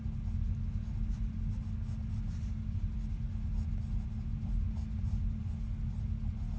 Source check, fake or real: real